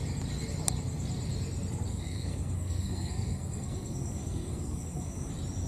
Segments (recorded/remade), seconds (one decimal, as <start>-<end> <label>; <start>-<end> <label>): 0.0-1.9 recorded; 1.9-5.3 remade; 5.3-5.7 recorded